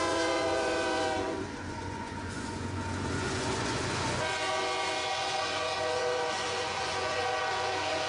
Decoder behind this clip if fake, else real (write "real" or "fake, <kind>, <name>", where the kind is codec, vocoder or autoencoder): fake, vocoder, Vocos